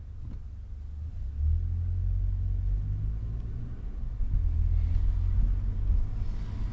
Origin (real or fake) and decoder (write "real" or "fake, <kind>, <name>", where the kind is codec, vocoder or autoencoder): real